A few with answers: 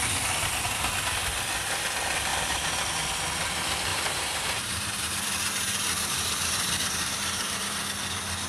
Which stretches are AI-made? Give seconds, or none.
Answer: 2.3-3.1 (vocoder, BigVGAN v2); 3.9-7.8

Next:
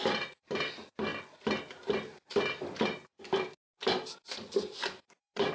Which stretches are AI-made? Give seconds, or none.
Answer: none

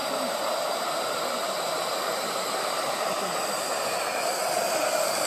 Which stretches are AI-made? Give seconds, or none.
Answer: 0.0-3.2 (vocoder, BigVGAN v2)

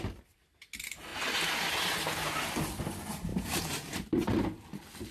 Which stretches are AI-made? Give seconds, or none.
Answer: 3.3-4.4 (vocoder, BigVGAN v2)

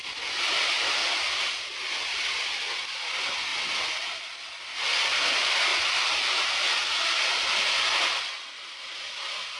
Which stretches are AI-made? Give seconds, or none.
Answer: 0.0-1.0 (vocoder, BigVGAN v2); 1.7-3.5; 4.8-5.7; 7.5-9.6

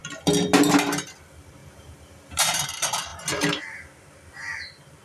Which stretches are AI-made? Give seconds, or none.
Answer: 1.6-2.7 (vocoder, BigVGAN v2)

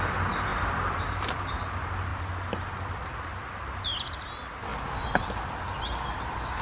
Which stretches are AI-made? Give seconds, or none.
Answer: 0.5-1.5 (vocoder, BigVGAN v2); 2.1-3.0